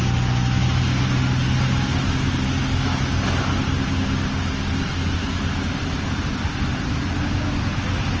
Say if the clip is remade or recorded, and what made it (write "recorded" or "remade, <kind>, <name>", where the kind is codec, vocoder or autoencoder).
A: recorded